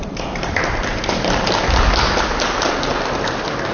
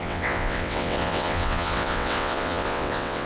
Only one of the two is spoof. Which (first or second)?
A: second